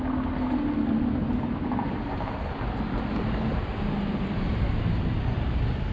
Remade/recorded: recorded